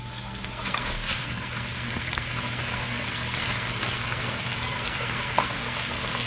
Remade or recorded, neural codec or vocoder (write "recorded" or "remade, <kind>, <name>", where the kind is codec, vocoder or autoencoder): remade, codec, SNAC